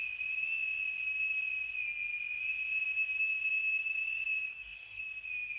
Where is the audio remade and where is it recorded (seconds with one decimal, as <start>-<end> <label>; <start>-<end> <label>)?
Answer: 0.0-4.5 recorded; 4.5-5.0 remade; 5.0-5.6 recorded